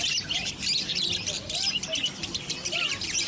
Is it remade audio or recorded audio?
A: recorded